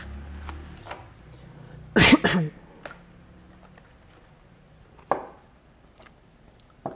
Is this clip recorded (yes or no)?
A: yes